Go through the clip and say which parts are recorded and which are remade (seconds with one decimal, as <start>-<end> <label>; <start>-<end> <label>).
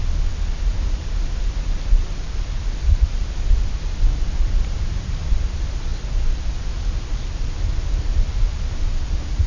0.0-9.5 recorded